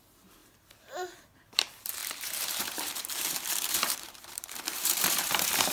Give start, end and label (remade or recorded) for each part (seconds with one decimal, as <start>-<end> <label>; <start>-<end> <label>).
0.0-5.7 remade